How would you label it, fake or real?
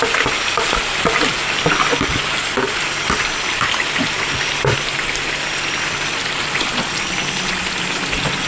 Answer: real